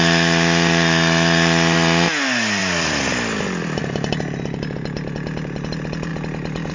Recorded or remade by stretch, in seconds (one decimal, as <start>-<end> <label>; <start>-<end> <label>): 0.0-2.6 recorded; 2.6-3.8 remade; 3.8-6.7 recorded